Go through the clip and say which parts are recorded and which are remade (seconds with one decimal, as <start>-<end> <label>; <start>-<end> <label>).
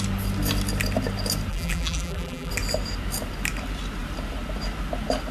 0.0-1.5 recorded; 1.5-2.5 remade; 2.5-5.3 recorded